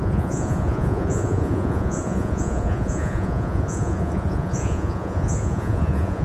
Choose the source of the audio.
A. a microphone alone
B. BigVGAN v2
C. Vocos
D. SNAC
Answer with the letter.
C